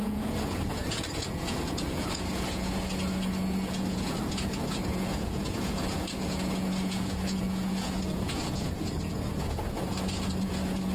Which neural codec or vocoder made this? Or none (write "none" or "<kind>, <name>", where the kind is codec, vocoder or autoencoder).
vocoder, Vocos